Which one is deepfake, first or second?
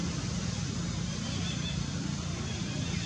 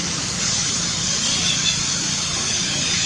second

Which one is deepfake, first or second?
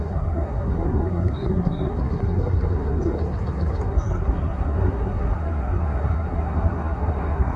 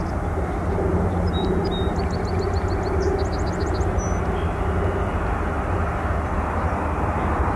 first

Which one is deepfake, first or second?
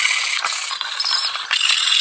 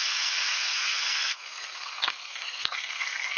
second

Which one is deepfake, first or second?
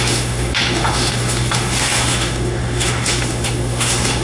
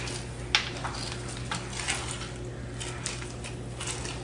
first